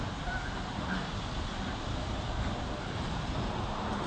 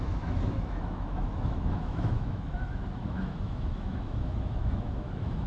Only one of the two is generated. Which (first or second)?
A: second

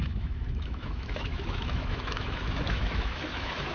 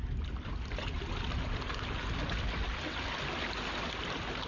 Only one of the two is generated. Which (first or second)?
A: first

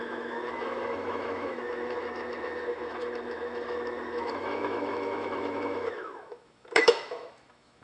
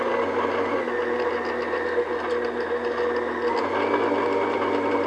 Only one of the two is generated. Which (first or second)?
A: first